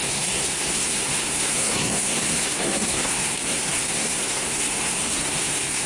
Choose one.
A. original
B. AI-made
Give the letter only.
B